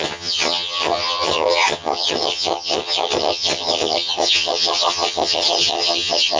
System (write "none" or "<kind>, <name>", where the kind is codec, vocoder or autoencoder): vocoder, HiFi-GAN